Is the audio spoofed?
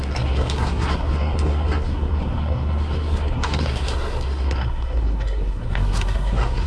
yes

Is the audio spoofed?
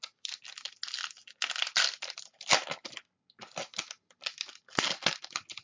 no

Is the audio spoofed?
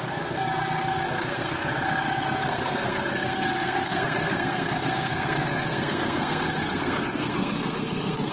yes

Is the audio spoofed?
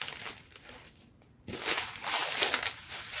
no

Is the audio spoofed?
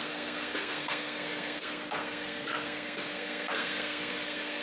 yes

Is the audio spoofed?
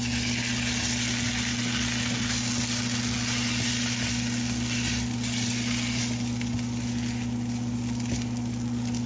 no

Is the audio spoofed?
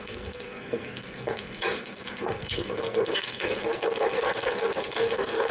yes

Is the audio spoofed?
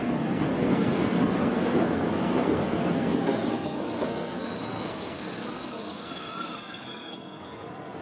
yes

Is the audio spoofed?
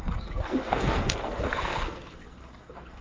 yes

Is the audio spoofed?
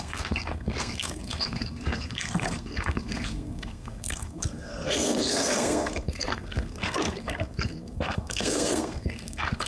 yes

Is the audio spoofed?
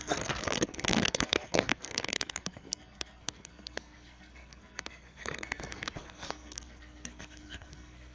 yes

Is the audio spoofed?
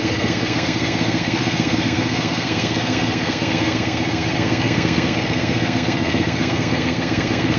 yes